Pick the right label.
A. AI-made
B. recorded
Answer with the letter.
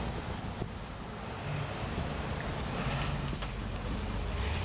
B